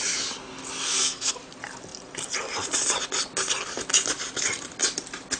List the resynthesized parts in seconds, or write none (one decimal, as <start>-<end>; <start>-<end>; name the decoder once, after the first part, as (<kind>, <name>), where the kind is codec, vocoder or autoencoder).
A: 0.8-1.3 (codec, SNAC)

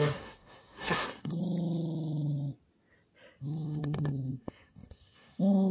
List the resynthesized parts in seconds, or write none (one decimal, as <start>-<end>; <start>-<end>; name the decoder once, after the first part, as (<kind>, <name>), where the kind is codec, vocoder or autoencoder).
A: 0.0-1.4 (codec, SNAC); 3.4-5.7

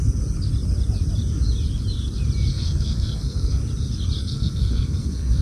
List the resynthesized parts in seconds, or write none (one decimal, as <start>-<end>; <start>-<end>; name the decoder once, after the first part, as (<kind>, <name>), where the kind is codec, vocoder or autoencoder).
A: 2.5-3.6 (codec, SNAC); 4.2-5.4

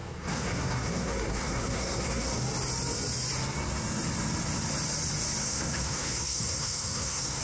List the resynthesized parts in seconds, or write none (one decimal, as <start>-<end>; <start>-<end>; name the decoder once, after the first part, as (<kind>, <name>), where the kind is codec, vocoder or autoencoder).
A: 0.0-2.3 (codec, SNAC); 5.4-7.4

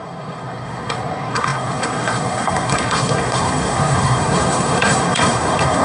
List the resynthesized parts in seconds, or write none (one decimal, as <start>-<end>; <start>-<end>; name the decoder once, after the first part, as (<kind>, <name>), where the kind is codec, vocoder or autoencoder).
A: 0.0-5.8 (codec, SNAC)